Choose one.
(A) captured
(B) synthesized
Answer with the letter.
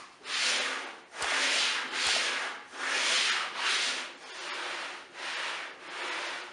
A